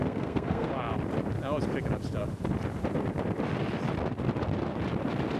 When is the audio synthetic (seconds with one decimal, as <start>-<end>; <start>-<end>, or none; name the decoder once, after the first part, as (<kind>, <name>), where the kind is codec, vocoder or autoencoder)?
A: 0.0-0.7 (codec, SNAC)